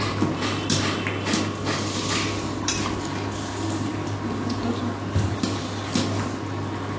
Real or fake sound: real